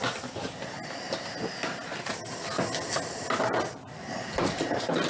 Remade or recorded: recorded